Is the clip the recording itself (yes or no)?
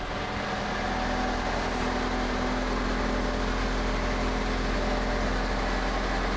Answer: yes